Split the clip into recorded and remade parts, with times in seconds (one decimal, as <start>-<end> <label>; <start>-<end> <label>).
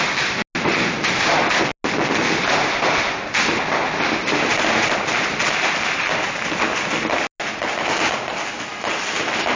0.0-9.6 recorded